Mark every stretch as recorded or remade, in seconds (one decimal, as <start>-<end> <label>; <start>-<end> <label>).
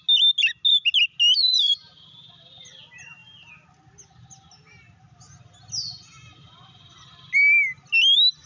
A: 0.0-1.4 recorded; 1.4-2.1 remade; 2.1-8.5 recorded